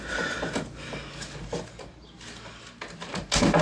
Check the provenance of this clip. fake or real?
real